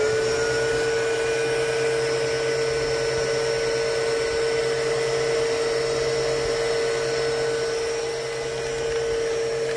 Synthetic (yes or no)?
no